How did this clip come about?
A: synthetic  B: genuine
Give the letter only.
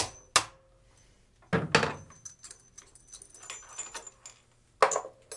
B